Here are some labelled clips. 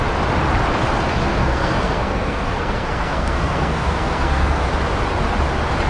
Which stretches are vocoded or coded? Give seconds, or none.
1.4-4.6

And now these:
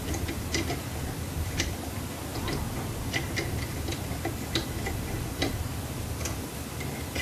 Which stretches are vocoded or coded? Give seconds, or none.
none

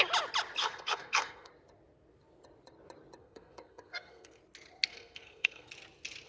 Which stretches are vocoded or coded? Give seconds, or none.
0.6-1.5; 3.2-4.4; 4.9-5.7

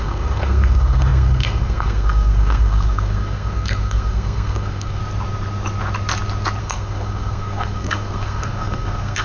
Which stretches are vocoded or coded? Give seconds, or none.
0.0-5.0; 6.6-9.2

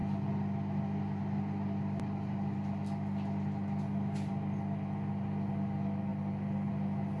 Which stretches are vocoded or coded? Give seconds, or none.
none

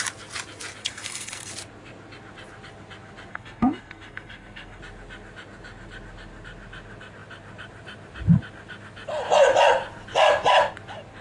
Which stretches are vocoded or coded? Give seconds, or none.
0.8-1.5; 3.3-4.8

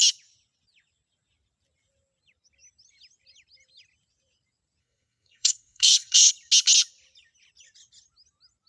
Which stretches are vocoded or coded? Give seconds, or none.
4.8-6.3

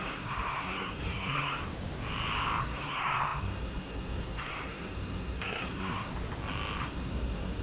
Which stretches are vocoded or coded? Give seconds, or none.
0.0-1.6; 2.6-6.1; 6.8-7.6